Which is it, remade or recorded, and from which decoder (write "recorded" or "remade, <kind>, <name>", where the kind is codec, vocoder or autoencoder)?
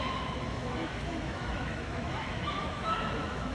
remade, autoencoder, DAC-VAE